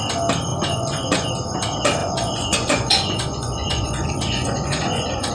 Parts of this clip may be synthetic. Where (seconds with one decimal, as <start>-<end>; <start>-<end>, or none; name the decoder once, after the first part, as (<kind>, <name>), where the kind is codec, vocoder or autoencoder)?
0.5-1.3 (vocoder, Vocos); 2.0-5.3